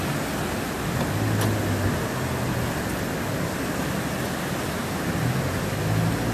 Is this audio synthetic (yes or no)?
no